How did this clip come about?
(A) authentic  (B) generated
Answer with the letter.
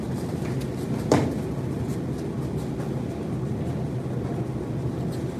A